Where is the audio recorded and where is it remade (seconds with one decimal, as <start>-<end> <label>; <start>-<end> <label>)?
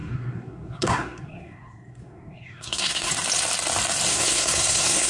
0.0-3.1 remade; 3.1-4.1 recorded; 4.1-5.1 remade